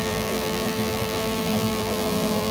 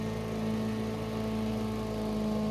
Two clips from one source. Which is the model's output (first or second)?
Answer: first